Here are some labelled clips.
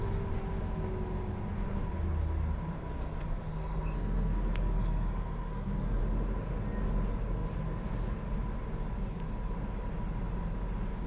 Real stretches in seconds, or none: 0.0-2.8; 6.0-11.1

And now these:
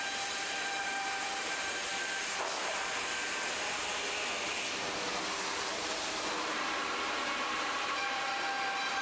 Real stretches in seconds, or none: 1.9-5.5

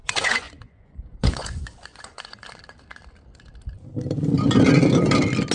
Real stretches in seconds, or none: 2.6-5.5

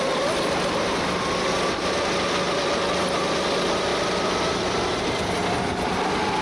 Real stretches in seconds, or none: 0.0-6.4

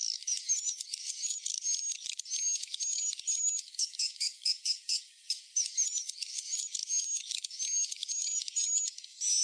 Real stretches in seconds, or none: 1.5-2.3

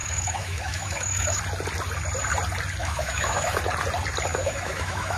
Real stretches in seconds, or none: 1.4-2.8; 3.6-4.3

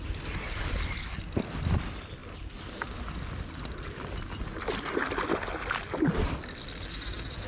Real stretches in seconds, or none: 2.2-6.1

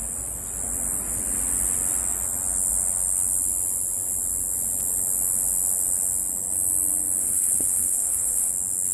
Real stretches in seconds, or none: 0.0-7.2; 8.5-8.9